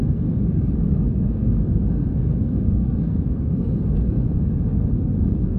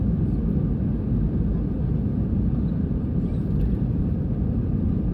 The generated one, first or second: first